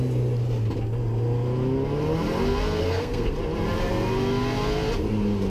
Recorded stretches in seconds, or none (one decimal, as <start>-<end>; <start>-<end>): 0.0-2.8; 3.3-5.5